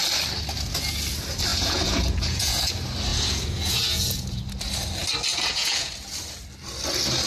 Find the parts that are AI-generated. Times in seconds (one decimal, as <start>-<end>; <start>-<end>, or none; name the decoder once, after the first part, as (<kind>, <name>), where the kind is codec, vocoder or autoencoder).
1.5-2.7 (vocoder, Vocos); 3.1-4.4; 5.3-5.9